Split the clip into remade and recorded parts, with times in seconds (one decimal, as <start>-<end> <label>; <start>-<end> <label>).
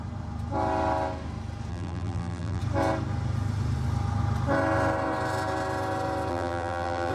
0.0-1.7 recorded; 1.7-2.6 remade; 2.6-6.3 recorded; 6.3-7.1 remade